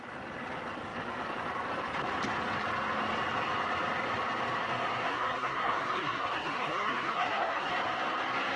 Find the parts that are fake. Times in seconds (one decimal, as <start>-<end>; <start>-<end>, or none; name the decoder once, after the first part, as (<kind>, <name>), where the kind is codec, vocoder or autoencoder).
5.1-7.7 (codec, SNAC)